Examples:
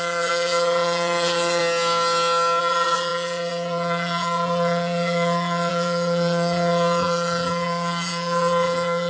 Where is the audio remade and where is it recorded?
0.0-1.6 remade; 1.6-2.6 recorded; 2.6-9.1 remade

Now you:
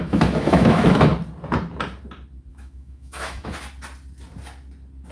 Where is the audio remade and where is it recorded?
0.0-1.1 remade; 1.1-2.5 recorded; 2.5-3.5 remade; 3.5-5.1 recorded

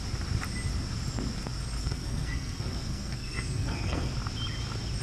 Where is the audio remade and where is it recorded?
0.0-1.8 recorded; 1.8-4.1 remade; 4.1-5.0 recorded

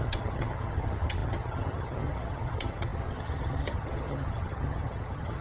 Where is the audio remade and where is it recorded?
0.0-5.4 remade

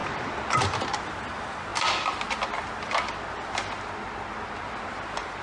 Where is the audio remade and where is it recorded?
0.0-5.4 recorded

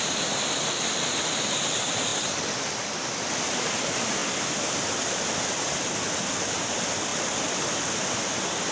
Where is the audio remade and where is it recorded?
0.0-4.2 remade; 4.2-6.5 recorded; 6.5-8.7 remade